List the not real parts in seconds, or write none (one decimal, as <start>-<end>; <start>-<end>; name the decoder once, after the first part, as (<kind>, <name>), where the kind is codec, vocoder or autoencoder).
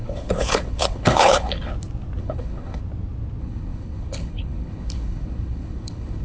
0.0-1.7 (codec, HILCodec); 2.2-2.8; 3.4-6.2